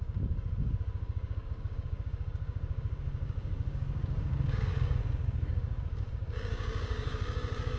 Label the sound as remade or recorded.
remade